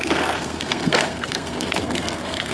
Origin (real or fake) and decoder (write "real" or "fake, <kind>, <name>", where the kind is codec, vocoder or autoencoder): fake, codec, SNAC